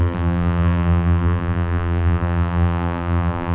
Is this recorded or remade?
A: remade